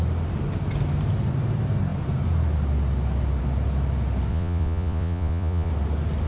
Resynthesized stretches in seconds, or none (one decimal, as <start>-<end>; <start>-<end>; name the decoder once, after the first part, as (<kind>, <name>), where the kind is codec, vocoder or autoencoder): 4.3-5.7 (vocoder, Vocos)